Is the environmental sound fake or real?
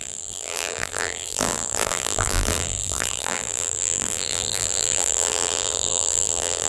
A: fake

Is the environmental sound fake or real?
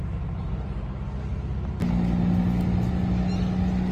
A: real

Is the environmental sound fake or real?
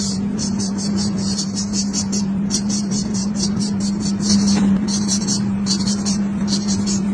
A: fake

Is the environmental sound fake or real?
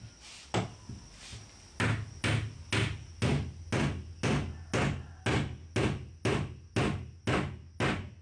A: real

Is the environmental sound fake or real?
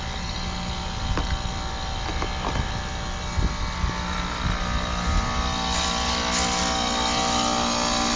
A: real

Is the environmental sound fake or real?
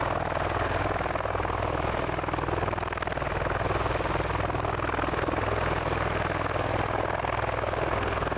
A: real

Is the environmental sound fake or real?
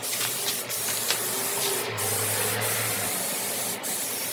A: real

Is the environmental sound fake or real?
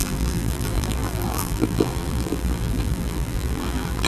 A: fake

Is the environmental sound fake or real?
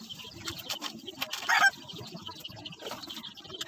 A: real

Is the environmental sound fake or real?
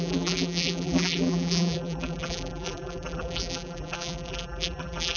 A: fake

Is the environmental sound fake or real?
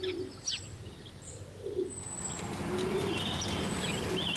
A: real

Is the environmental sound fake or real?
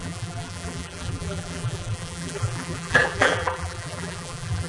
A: fake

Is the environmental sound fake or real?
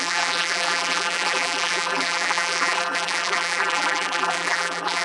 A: fake